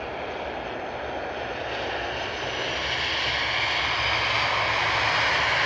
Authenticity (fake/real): real